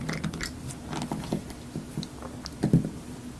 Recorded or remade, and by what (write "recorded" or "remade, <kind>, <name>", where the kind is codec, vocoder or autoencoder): recorded